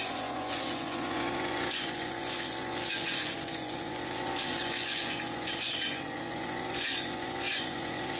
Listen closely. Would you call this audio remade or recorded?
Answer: remade